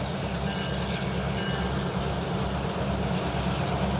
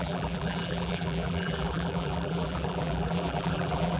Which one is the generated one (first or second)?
second